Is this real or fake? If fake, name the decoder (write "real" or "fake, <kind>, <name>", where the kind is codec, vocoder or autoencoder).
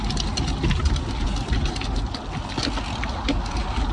real